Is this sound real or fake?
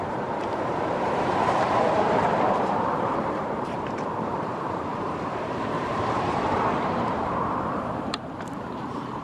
fake